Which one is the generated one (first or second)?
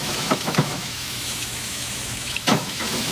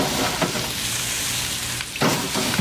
first